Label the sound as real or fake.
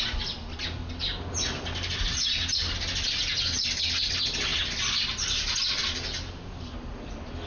real